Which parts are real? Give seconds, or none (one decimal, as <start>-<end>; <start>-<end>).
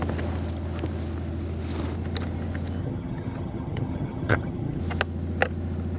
0.0-2.8; 4.8-6.0